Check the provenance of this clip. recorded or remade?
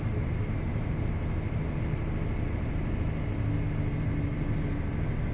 recorded